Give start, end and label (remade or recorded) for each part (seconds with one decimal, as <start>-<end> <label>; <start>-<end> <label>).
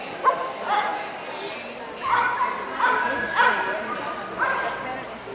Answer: 0.0-5.3 recorded